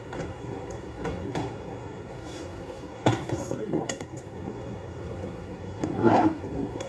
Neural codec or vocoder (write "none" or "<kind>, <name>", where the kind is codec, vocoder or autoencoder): codec, SNAC